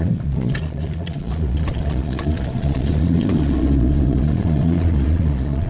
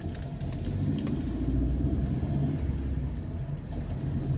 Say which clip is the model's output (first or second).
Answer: first